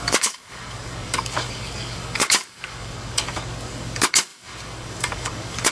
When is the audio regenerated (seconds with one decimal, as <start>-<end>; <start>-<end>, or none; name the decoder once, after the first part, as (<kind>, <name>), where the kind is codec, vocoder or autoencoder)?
0.0-5.7 (codec, DAC)